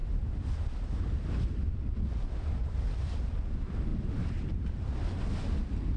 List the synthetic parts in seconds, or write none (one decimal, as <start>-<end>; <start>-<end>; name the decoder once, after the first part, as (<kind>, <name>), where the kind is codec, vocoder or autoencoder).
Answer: 2.6-3.2 (vocoder, BigVGAN v2); 3.9-5.2